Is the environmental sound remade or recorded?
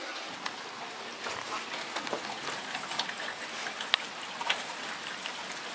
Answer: recorded